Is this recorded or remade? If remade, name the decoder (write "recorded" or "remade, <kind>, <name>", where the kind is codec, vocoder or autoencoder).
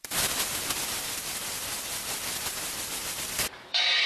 remade, vocoder, BigVGAN v2